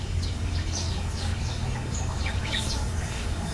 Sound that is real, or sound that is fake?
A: fake